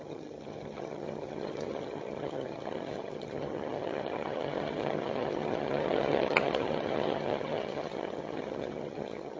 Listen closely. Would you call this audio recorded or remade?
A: remade